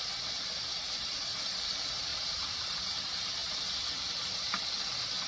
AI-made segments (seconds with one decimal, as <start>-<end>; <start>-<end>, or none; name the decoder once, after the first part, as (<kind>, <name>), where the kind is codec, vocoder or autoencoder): 0.7-1.4 (vocoder, BigVGAN v2); 2.1-2.8; 3.4-4.7